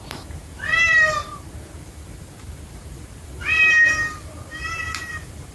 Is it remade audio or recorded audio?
remade